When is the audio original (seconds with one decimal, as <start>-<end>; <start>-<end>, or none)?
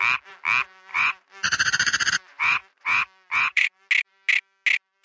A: 0.0-0.9; 3.9-5.0